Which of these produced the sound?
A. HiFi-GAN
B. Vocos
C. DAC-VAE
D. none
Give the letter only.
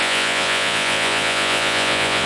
B